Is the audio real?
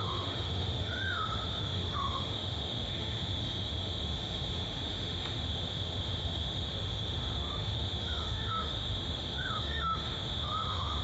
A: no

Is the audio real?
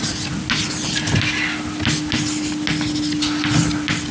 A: yes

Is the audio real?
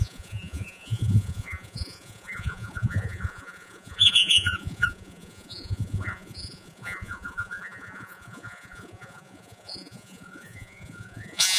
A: no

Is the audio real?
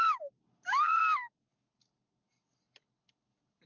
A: yes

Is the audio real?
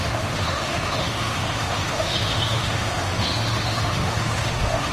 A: no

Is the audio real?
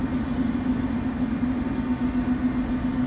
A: yes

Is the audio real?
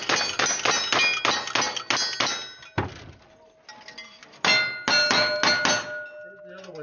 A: yes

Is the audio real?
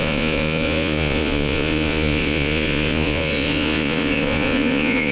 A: no